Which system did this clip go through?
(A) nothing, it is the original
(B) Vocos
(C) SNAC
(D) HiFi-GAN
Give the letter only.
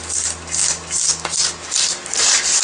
A